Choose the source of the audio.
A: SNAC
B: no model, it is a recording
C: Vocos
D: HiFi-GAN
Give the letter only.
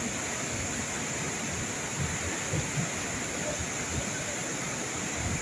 B